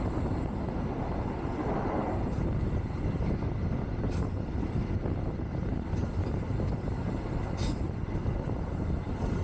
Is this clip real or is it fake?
real